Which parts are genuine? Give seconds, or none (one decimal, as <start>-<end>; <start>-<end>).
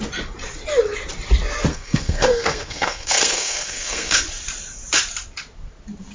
0.0-1.7; 4.2-6.1